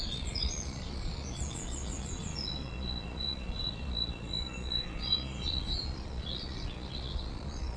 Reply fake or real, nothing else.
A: fake